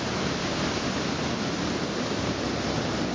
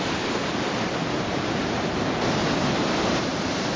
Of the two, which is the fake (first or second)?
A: second